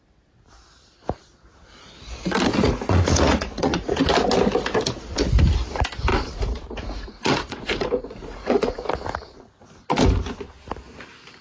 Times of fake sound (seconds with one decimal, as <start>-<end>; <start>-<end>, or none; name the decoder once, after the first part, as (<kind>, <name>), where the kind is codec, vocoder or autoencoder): 2.6-4.0 (vocoder, Vocos); 6.1-8.9